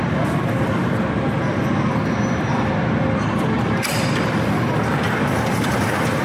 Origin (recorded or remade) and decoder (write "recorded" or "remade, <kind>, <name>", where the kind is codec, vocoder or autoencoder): recorded